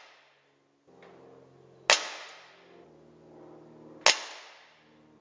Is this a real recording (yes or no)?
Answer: yes